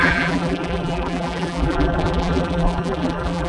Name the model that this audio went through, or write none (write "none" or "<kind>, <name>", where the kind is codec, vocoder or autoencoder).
vocoder, BigVGAN v2